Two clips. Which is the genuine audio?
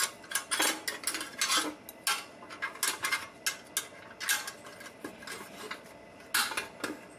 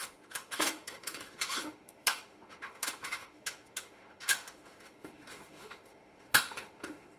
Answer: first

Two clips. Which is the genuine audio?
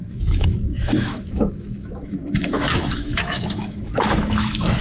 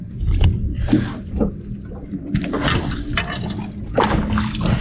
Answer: second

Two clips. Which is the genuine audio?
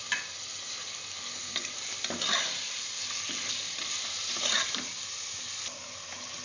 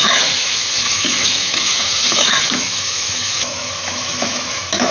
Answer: first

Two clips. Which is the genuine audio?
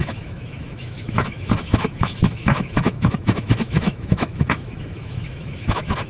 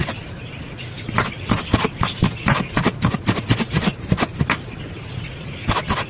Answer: second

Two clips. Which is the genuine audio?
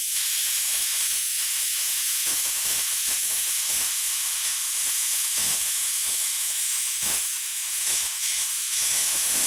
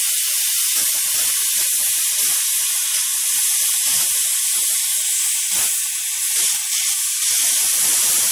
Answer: second